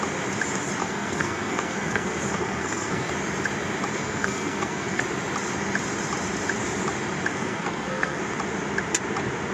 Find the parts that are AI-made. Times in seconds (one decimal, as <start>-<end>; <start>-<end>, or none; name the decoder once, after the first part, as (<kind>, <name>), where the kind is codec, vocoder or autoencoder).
0.8-3.1 (codec, SNAC); 3.9-5.0; 7.3-8.2